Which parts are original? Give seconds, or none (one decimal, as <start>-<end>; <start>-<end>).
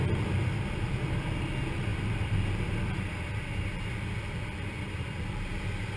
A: none